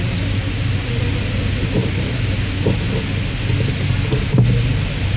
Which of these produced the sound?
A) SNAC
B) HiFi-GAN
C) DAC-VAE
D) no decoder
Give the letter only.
D